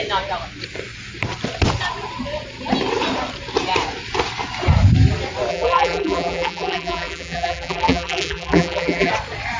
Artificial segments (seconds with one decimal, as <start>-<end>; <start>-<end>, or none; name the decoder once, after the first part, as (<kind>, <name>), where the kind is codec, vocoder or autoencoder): 5.5-9.1 (vocoder, BigVGAN v2)